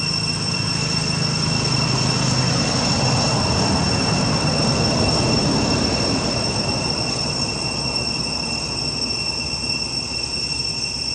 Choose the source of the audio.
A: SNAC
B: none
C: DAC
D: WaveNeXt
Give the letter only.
B